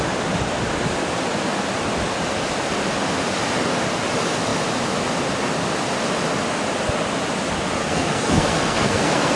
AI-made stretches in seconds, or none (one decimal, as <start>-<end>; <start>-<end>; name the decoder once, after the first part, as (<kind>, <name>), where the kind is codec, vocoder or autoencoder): 7.8-9.4 (codec, SNAC)